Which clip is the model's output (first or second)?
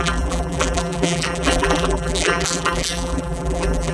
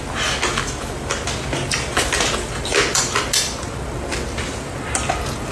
first